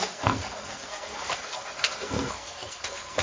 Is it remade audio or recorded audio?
remade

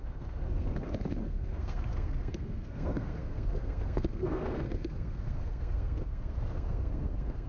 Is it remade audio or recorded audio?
remade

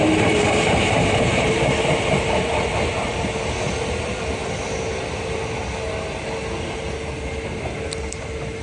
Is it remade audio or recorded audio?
recorded